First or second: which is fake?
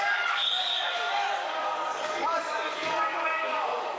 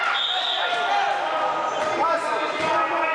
first